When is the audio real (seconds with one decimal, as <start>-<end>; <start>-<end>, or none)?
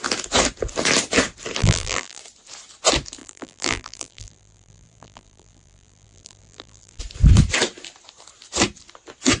0.0-1.6; 2.2-3.2; 7.0-9.4